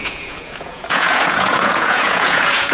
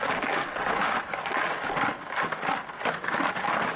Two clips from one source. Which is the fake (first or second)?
first